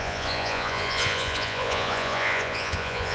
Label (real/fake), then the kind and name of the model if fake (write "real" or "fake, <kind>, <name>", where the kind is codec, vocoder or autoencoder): fake, vocoder, Vocos